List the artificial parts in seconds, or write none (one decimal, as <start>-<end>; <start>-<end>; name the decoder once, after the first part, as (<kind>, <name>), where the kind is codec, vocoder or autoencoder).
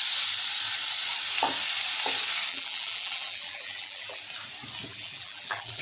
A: 2.5-4.2 (vocoder, BigVGAN v2); 4.9-5.8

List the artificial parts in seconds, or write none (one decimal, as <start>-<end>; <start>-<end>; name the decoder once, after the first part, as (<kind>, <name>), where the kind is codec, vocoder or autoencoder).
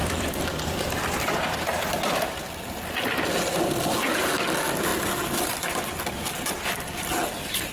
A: 0.0-2.5 (vocoder, BigVGAN v2); 4.9-6.1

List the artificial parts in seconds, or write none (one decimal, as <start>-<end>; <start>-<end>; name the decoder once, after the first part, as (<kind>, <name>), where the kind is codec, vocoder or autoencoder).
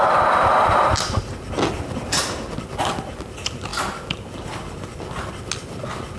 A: none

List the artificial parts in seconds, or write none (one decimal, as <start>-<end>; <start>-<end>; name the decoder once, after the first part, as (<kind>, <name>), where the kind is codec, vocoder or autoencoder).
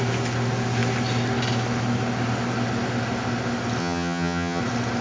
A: 3.8-4.6 (vocoder, HiFi-GAN)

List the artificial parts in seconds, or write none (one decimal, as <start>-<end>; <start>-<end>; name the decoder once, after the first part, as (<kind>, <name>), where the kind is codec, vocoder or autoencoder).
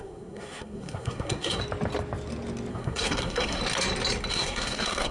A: 0.0-1.6 (codec, SNAC); 2.7-3.6; 4.3-5.1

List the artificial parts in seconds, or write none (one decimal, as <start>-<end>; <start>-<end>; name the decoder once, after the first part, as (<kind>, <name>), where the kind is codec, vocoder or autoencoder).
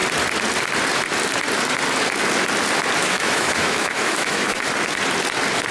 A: 3.0-4.6 (autoencoder, DAC-VAE)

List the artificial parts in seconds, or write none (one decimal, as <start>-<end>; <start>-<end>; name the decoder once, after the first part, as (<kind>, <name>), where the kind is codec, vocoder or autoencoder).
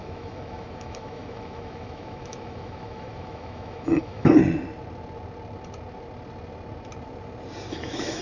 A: 0.0-4.4 (autoencoder, DAC-VAE); 7.7-8.2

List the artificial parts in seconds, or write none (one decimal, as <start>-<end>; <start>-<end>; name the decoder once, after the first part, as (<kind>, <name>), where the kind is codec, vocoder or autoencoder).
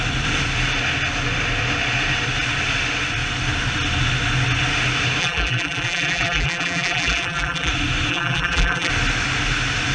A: 5.2-7.7 (vocoder, BigVGAN v2); 8.1-8.9